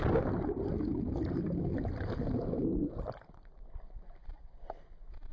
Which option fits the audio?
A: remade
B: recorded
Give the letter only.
A